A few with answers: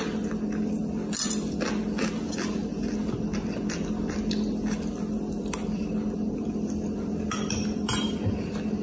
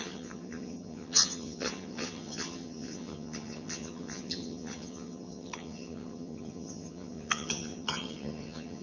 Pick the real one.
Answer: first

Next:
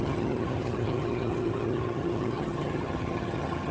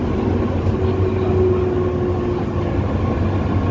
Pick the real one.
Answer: second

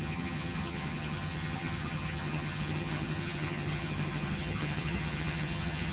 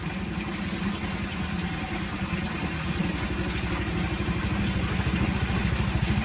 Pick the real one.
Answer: second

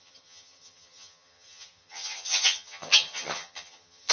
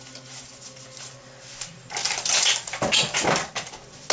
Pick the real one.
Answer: second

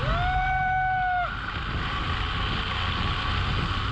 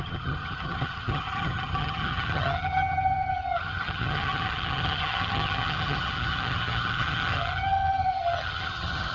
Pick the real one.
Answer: first